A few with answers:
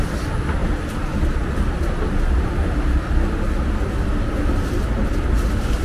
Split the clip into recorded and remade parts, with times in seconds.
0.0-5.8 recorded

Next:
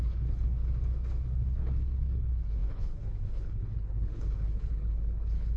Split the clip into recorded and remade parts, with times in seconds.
0.0-0.6 remade; 0.6-1.1 recorded; 1.1-5.6 remade

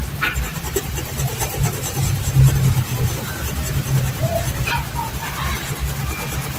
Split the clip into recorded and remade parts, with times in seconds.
0.0-2.0 remade; 2.0-3.2 recorded; 3.2-4.3 remade; 4.3-6.6 recorded

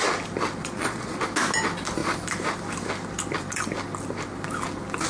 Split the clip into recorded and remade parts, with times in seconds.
0.0-0.6 recorded; 0.6-1.2 remade; 1.2-5.1 recorded

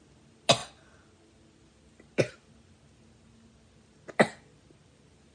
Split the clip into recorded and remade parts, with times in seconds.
0.0-5.3 recorded

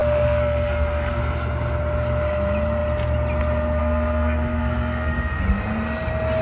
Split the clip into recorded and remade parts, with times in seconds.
0.0-1.2 remade; 1.2-3.8 recorded; 3.8-5.4 remade; 5.4-6.4 recorded

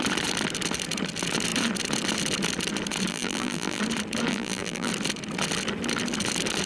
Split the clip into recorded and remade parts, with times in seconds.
0.0-3.1 recorded; 3.1-3.8 remade; 3.8-4.3 recorded; 4.3-4.9 remade; 4.9-6.7 recorded

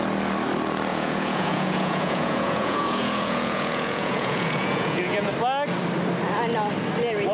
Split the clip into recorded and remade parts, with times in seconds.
0.0-0.9 recorded; 0.9-5.3 remade; 5.3-7.3 recorded